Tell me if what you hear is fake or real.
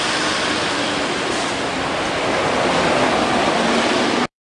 fake